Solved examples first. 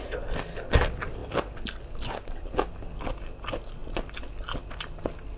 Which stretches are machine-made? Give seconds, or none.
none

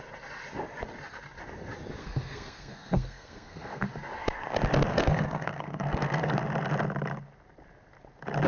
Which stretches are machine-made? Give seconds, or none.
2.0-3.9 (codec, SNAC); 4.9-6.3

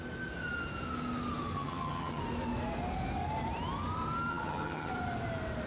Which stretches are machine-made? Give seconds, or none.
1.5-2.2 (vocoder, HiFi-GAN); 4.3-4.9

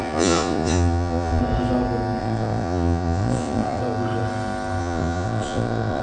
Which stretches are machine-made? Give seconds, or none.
0.0-1.4 (vocoder, Vocos); 2.2-3.8; 4.8-6.0

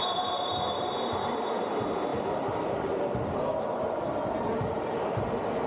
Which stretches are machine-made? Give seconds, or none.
none